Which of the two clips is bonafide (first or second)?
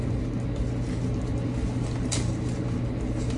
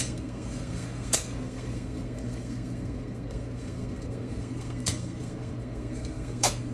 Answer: first